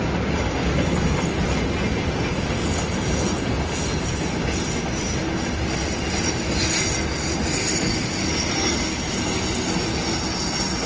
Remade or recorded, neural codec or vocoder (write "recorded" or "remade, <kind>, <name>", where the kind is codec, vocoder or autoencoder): recorded